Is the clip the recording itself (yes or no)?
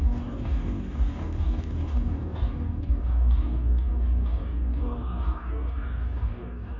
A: no